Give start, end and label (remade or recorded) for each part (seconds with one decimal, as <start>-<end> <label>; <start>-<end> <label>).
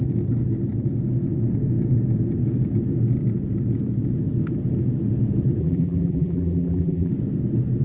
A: 0.0-5.6 recorded; 5.6-7.1 remade; 7.1-7.8 recorded